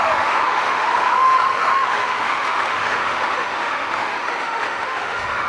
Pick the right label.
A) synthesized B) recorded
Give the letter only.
A